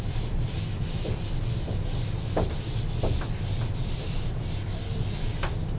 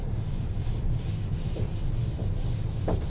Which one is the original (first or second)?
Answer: first